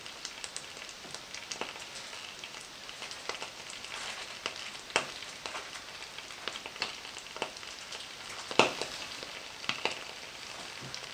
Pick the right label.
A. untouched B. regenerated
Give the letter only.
A